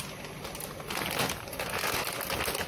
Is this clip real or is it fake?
real